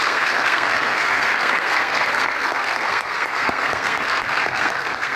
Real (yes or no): no